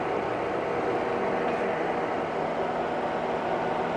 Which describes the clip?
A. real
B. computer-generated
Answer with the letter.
A